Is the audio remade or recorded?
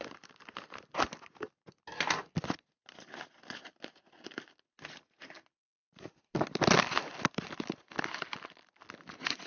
recorded